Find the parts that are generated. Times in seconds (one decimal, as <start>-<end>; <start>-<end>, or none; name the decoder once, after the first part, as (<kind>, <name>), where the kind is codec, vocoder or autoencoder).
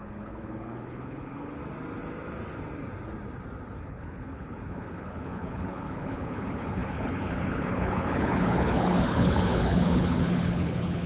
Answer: 0.0-1.6 (codec, HILCodec); 3.8-11.1